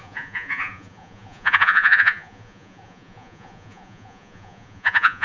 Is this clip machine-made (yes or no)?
yes